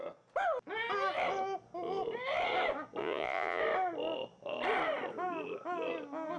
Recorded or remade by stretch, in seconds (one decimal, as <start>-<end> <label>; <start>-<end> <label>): 0.0-3.0 recorded; 3.0-3.6 remade; 3.6-6.4 recorded